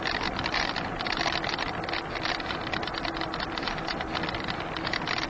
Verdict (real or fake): real